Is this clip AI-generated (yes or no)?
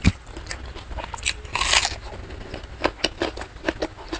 no